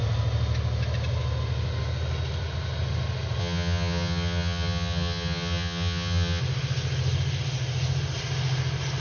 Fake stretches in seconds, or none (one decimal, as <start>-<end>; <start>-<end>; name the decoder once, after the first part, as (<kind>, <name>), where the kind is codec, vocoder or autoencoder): 3.4-6.4 (vocoder, HiFi-GAN)